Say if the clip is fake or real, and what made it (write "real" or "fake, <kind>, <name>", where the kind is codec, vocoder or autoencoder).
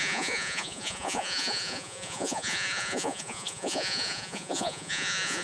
fake, vocoder, Vocos